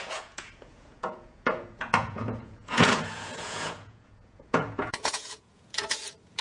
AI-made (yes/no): yes